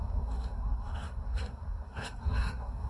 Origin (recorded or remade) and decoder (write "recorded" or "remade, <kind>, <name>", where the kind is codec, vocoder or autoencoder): remade, codec, SNAC